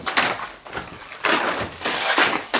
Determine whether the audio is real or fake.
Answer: fake